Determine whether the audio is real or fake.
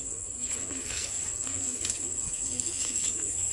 fake